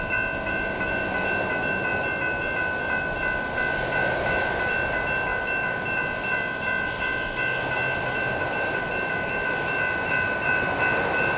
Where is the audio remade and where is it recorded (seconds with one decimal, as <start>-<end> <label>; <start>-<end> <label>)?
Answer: 0.0-11.4 recorded